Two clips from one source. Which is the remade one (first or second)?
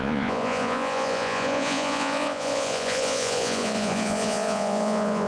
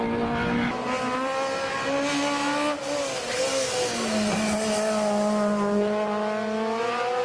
first